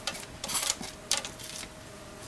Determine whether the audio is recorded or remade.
remade